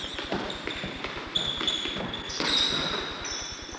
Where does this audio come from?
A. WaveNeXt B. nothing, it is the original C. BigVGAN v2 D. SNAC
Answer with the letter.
B